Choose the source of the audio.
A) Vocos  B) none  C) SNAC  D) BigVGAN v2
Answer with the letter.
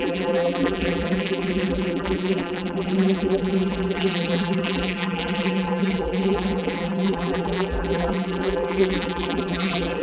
D